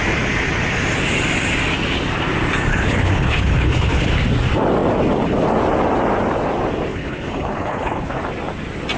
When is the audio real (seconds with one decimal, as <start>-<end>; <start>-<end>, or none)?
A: 0.0-2.7; 4.1-6.9; 8.2-9.0